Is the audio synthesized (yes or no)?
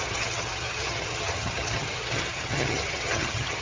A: yes